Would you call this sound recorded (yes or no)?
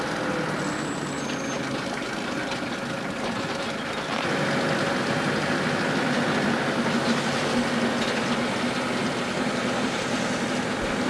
yes